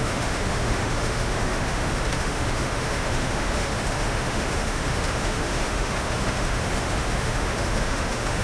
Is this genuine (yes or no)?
no